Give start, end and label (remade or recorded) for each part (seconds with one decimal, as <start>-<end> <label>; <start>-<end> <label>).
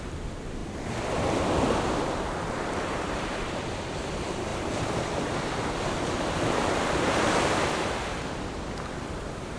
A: 0.0-0.6 remade; 0.6-1.4 recorded; 1.4-9.6 remade